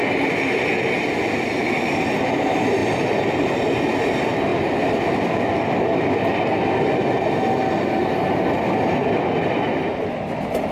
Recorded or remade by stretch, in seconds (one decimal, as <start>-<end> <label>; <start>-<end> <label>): 0.0-10.7 recorded

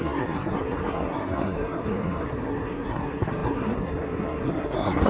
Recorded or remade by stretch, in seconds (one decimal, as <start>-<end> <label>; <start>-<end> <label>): 0.0-5.1 remade

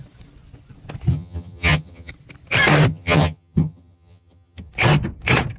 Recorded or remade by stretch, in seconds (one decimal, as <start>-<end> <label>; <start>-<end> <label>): 0.0-1.1 recorded; 1.1-2.1 remade; 2.1-2.9 recorded; 2.9-4.7 remade; 4.7-5.6 recorded

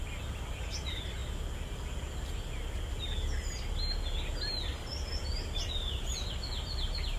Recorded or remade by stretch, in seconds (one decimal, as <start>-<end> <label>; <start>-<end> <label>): 0.0-7.2 recorded

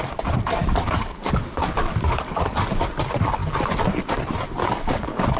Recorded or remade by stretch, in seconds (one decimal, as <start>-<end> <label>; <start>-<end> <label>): 0.0-0.6 recorded; 0.6-2.8 remade; 2.8-4.6 recorded; 4.6-5.4 remade

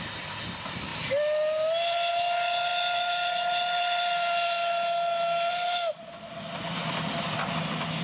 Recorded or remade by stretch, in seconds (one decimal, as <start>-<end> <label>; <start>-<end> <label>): 0.0-8.0 recorded

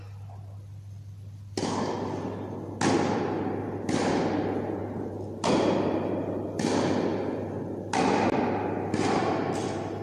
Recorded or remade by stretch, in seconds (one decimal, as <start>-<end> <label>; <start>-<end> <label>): 0.0-10.0 recorded